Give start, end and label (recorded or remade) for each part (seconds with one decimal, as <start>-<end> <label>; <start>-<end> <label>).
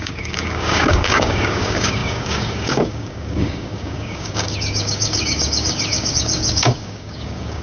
0.0-7.6 remade